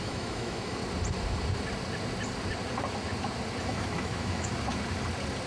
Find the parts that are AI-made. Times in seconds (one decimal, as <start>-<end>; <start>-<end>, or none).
0.0-0.8; 3.6-4.5